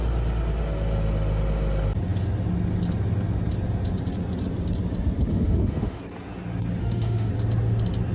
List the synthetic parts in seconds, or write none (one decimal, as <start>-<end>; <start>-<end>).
5.3-6.0; 6.8-7.3